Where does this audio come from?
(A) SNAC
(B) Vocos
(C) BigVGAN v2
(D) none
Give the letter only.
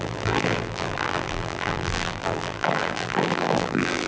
C